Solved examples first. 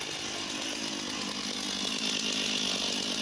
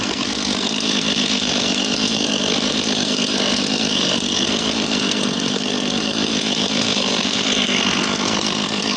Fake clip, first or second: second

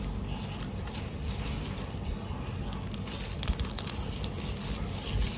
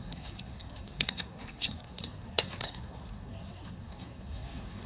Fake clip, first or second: second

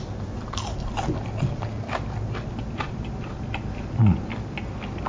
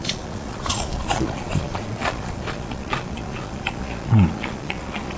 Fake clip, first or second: second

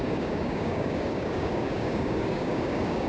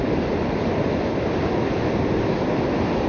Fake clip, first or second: first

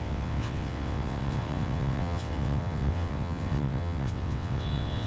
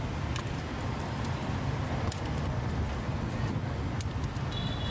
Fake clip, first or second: first